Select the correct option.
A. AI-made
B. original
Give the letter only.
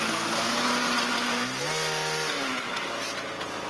B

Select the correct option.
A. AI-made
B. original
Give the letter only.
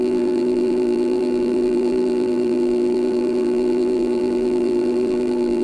A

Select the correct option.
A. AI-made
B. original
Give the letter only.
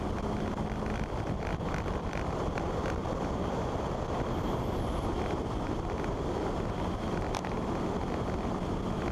B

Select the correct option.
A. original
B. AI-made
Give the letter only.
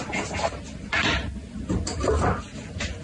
A